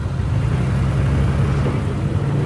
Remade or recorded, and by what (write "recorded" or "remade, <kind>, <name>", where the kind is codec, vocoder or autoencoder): recorded